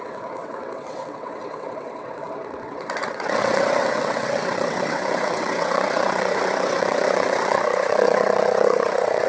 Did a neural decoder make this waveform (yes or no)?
yes